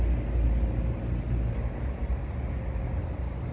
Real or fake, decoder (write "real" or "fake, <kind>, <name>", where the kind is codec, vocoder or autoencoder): real